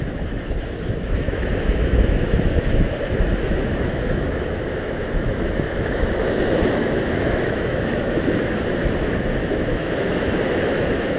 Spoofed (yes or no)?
yes